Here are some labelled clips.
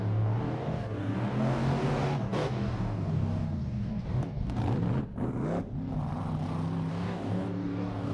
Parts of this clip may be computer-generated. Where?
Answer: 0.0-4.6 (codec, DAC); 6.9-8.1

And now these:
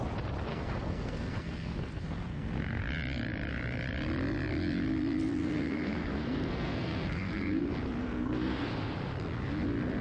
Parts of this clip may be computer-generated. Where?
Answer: 0.5-2.8 (codec, SNAC); 5.4-7.6; 8.0-8.7

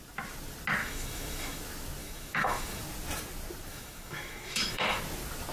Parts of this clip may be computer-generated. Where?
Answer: 0.8-1.6 (autoencoder, DAC-VAE); 2.0-2.8; 3.7-5.0

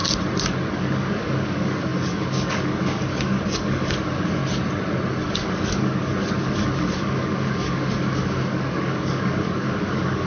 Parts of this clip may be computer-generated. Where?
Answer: 0.7-4.4 (codec, DAC); 5.1-10.3

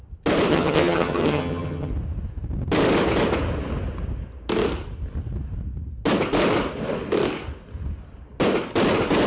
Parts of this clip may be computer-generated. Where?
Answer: 0.5-1.9 (vocoder, HiFi-GAN)